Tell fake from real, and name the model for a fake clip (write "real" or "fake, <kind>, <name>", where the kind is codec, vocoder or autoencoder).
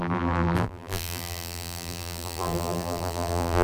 fake, vocoder, BigVGAN v2